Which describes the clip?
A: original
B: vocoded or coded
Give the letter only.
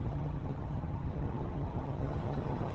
B